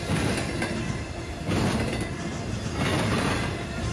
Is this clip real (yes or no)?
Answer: yes